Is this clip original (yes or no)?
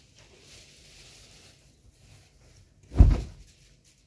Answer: yes